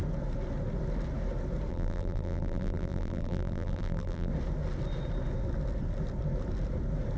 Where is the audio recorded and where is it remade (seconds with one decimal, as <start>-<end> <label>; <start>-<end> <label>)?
0.0-1.7 recorded; 1.7-4.3 remade; 4.3-7.2 recorded